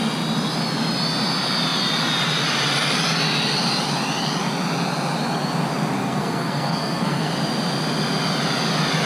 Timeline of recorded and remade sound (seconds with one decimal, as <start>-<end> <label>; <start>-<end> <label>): 0.0-6.0 recorded; 6.0-7.3 remade; 7.3-9.1 recorded